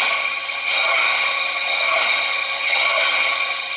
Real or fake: fake